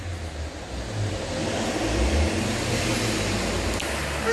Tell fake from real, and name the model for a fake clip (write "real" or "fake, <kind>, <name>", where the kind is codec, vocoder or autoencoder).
real